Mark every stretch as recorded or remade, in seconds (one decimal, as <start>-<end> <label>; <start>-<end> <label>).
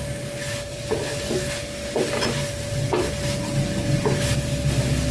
0.0-5.1 recorded